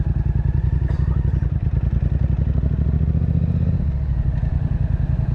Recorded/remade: remade